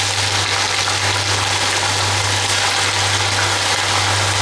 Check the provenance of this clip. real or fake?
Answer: real